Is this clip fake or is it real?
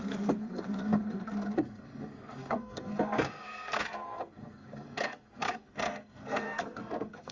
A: fake